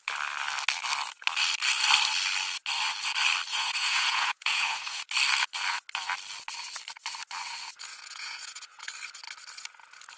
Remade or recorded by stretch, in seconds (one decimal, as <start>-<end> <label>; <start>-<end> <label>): 0.0-3.5 recorded; 3.5-5.0 remade; 5.0-7.9 recorded; 7.9-8.9 remade; 8.9-10.2 recorded